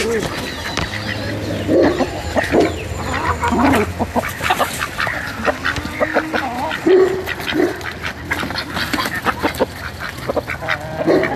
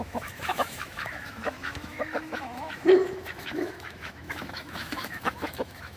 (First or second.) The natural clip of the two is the first